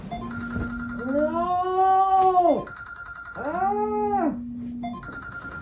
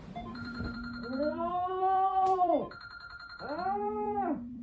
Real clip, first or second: first